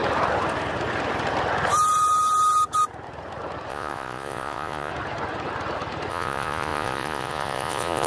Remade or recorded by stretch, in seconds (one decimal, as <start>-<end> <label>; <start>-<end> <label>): 0.0-3.7 recorded; 3.7-4.9 remade; 4.9-6.1 recorded; 6.1-8.1 remade